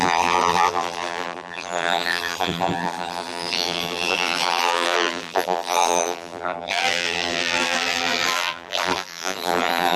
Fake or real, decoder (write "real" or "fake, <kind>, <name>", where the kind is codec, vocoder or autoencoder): fake, vocoder, BigVGAN v2